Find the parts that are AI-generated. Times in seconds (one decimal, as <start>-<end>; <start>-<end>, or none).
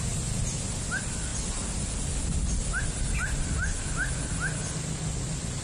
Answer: none